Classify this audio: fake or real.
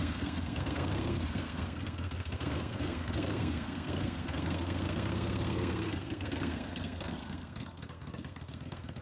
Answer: fake